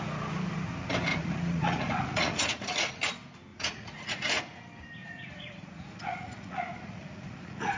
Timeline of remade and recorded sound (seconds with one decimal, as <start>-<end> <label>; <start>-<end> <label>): 0.0-1.1 recorded; 1.1-2.9 remade; 2.9-3.5 recorded; 3.5-4.4 remade; 4.4-5.0 recorded; 5.0-7.8 remade